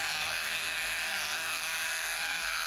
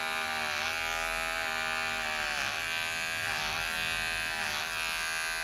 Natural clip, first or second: second